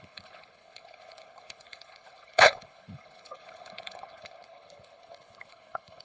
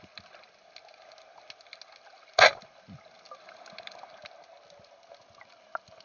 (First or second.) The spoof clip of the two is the first